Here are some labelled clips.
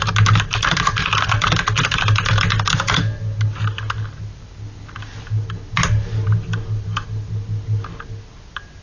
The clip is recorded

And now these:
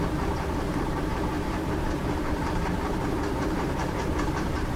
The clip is remade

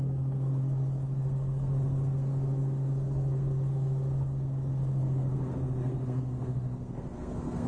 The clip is remade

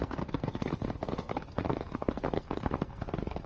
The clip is remade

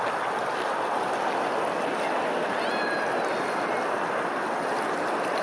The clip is recorded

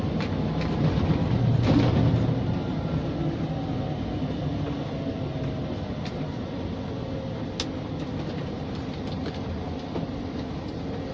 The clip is recorded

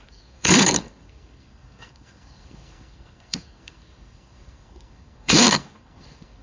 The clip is remade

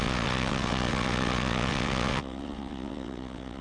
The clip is remade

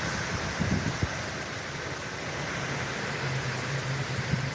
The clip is recorded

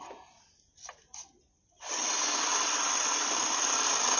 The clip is recorded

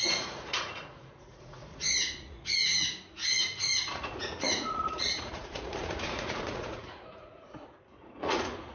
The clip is remade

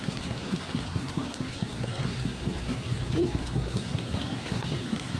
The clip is remade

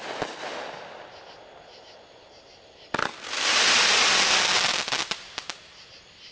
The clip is recorded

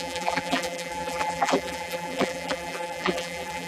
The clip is remade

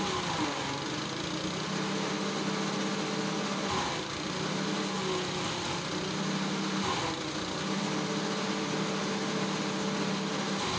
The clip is recorded